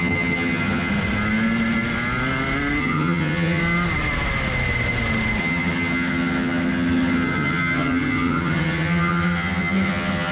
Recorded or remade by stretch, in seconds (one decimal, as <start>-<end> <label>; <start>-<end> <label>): 0.0-0.9 remade; 0.9-2.8 recorded; 2.8-3.6 remade; 3.6-5.4 recorded; 5.4-10.3 remade